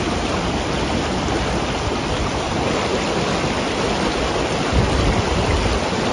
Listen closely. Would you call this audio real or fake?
real